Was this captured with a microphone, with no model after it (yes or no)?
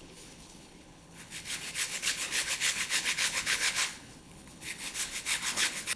no